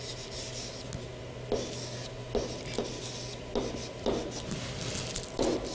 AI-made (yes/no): no